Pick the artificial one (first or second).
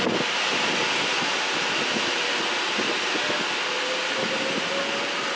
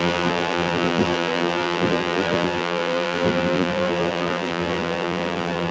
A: second